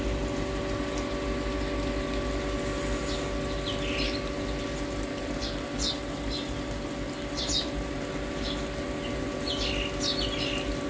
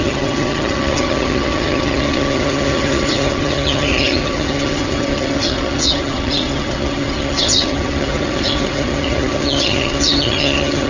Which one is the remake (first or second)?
second